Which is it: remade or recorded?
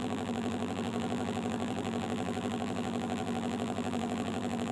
remade